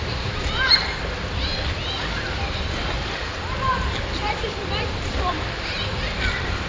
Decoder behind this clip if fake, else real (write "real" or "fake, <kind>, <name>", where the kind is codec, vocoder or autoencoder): fake, vocoder, BigVGAN v2